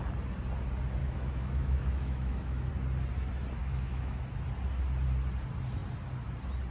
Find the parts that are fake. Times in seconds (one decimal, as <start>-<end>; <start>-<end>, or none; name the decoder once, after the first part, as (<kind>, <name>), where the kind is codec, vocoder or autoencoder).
1.0-2.7 (autoencoder, DAC-VAE); 3.6-4.2